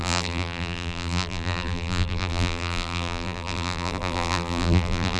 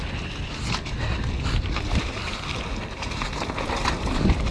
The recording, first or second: second